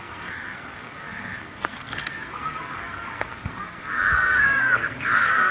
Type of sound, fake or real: fake